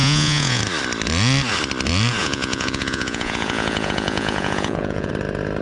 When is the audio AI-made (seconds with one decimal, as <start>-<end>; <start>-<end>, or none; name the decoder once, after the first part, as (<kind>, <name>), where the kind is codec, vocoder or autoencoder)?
0.0-0.6 (vocoder, Vocos); 2.2-5.1